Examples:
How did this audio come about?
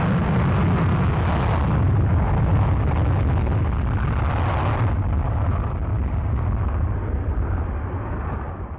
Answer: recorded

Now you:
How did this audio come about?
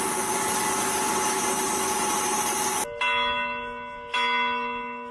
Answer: recorded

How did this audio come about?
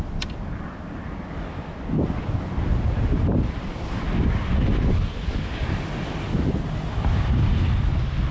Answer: recorded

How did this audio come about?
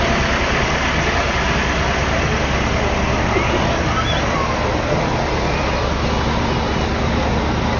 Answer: recorded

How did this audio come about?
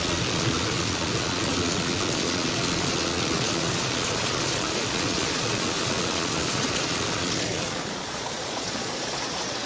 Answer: remade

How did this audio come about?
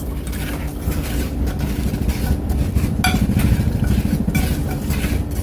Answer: recorded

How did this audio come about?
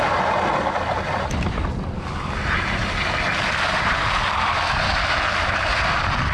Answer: recorded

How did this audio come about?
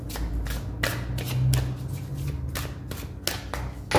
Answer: recorded